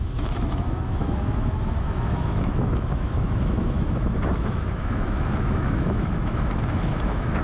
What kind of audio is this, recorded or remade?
remade